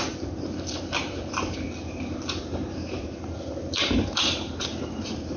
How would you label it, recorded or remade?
remade